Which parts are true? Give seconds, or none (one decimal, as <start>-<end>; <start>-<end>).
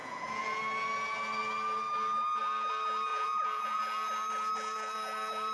0.6-3.1; 3.8-5.5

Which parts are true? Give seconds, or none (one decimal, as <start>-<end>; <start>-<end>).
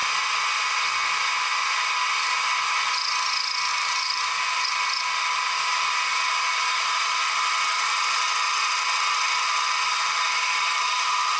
0.0-3.7; 4.6-6.1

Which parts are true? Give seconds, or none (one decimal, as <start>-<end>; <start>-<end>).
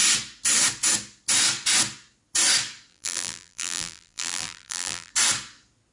0.0-2.9; 5.1-5.9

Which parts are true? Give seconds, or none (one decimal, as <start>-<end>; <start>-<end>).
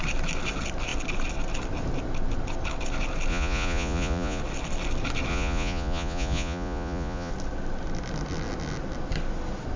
0.0-3.3; 4.4-5.3; 7.3-9.8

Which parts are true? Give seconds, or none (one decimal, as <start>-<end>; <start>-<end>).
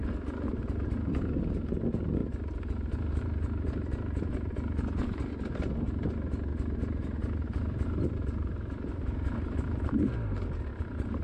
0.0-6.5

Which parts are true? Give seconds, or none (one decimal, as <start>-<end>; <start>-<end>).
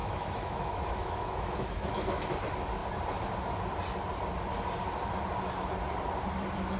2.3-6.8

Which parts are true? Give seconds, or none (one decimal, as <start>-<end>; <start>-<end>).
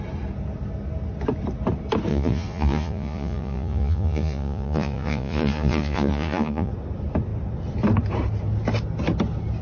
0.0-2.1; 6.7-9.6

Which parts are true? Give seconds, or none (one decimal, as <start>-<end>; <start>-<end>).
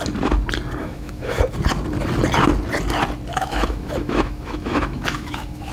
0.0-0.8; 1.4-3.3